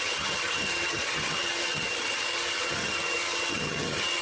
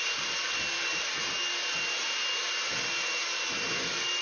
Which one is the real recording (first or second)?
second